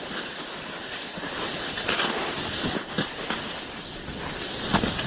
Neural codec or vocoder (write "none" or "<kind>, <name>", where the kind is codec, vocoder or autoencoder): none